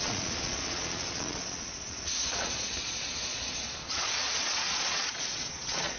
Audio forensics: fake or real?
fake